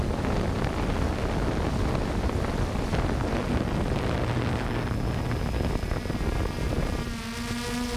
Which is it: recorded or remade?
recorded